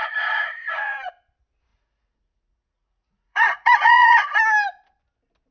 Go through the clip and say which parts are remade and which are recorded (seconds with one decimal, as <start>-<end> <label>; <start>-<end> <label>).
0.0-1.1 remade; 1.1-1.7 recorded; 1.7-4.4 remade; 4.4-5.5 recorded